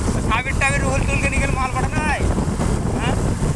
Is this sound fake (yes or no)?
no